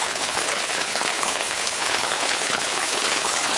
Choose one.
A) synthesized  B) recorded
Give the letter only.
A